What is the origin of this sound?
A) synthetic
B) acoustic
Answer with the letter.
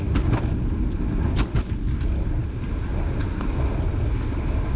B